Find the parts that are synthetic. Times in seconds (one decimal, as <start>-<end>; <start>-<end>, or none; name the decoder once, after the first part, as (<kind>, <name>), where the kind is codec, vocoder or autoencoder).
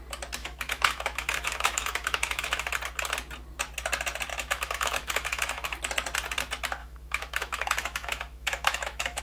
0.4-2.7 (autoencoder, DAC-VAE); 4.3-5.8; 6.8-9.2